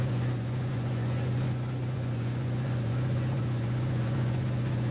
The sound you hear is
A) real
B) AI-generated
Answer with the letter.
B